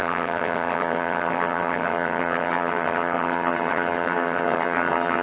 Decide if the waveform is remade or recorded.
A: remade